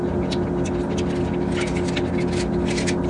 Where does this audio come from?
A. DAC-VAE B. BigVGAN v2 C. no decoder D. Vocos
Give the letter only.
C